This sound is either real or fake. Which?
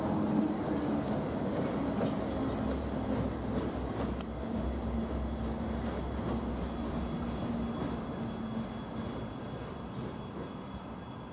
real